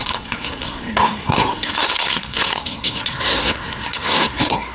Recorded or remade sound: remade